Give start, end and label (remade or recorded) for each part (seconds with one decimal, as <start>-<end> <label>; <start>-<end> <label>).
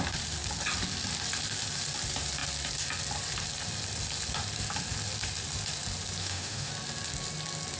0.0-6.2 recorded; 6.2-6.7 remade; 6.7-7.8 recorded